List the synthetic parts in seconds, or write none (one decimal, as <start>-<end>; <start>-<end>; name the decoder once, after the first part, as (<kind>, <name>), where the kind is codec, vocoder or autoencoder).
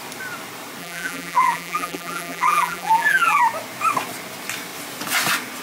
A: 0.8-3.4 (vocoder, BigVGAN v2)